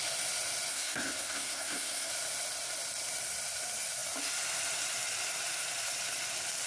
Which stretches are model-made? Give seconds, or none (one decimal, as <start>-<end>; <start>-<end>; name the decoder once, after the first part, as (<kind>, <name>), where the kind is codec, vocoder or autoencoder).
0.7-2.1 (codec, SNAC)